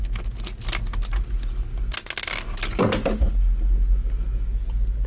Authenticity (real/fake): real